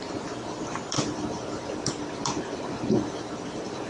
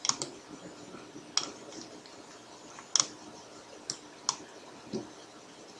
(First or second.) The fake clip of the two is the first